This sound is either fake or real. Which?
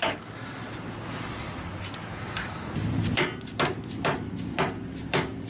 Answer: real